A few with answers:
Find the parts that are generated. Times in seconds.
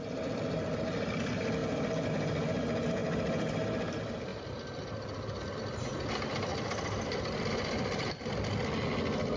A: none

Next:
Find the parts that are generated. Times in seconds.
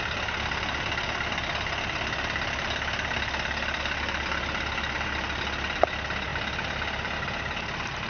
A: none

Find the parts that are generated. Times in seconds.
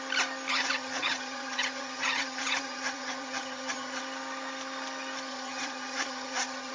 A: 0.5-4.0 (vocoder, HiFi-GAN); 5.3-6.7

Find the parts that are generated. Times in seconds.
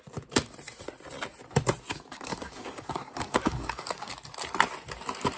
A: 1.9-4.1 (codec, DAC)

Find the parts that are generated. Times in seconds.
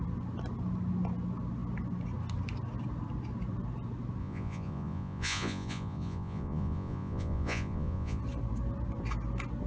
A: 4.2-8.2 (vocoder, Vocos)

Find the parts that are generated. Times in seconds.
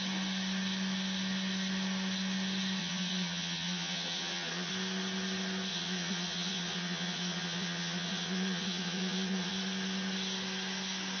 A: 2.8-4.7 (vocoder, Vocos); 5.7-9.5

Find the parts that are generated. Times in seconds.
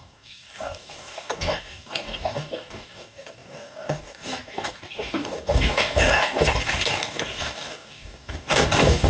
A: 0.0-9.1 (codec, DAC)